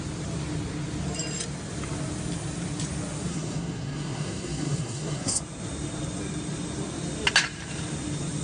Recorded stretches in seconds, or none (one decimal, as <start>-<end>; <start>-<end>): 0.0-3.3; 5.4-8.4